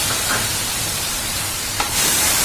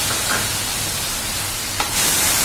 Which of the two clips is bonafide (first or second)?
second